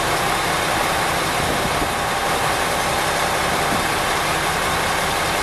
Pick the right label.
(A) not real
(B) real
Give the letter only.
B